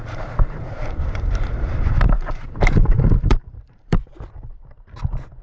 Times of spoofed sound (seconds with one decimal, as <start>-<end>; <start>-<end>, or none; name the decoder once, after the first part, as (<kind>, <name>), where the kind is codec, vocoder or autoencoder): 0.0-4.0 (vocoder, BigVGAN v2)